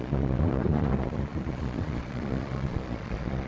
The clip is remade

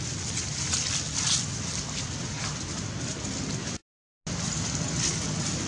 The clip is recorded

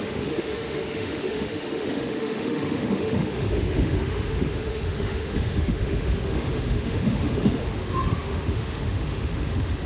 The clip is remade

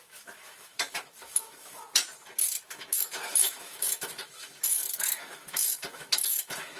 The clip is remade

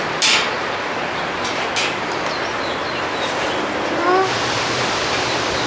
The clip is recorded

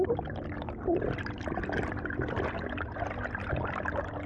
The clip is recorded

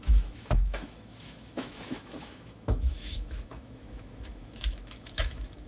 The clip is remade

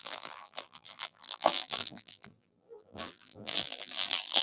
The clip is remade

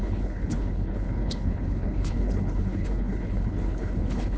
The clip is remade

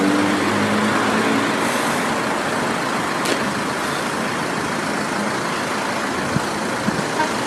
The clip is recorded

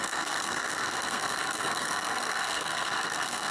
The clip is remade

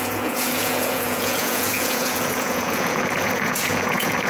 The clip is remade